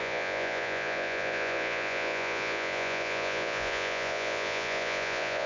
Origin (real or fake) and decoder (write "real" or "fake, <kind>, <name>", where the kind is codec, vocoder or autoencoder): fake, vocoder, Vocos